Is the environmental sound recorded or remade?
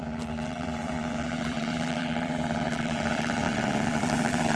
remade